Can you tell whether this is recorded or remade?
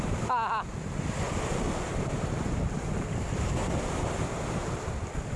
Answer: recorded